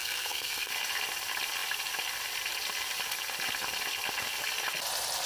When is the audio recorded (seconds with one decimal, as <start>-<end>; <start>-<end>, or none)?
0.7-5.3